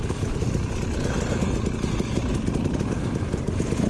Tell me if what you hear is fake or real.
real